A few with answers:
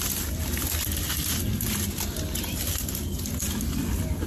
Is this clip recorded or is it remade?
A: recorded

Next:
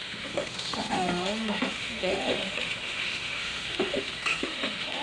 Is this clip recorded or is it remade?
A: remade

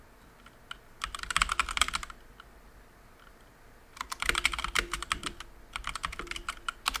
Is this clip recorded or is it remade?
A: recorded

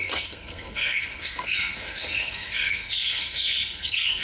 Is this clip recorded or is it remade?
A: remade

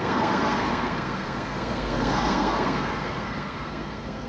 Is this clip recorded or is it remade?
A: remade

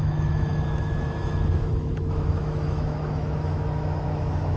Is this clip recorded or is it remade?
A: remade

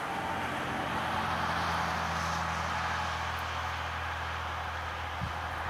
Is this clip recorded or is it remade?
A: recorded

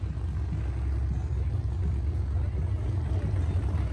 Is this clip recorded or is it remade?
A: recorded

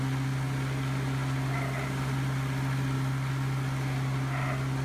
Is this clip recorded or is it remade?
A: recorded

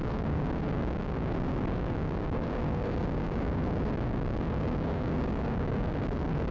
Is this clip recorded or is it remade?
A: remade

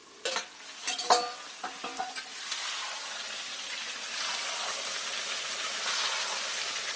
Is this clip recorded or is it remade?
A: recorded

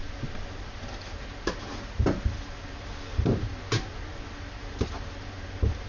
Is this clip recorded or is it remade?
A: recorded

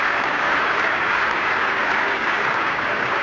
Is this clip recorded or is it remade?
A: remade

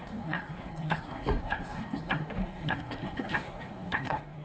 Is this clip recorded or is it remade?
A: remade